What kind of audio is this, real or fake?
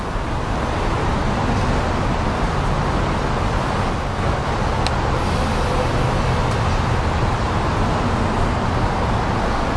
real